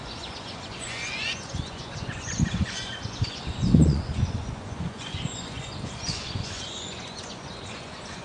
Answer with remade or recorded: remade